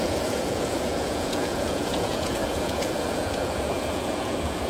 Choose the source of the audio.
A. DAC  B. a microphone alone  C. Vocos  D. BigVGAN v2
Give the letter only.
C